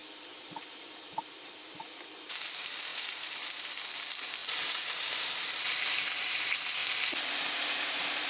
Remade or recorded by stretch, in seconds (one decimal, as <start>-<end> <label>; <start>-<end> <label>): 0.0-6.8 remade; 6.8-7.6 recorded; 7.6-8.3 remade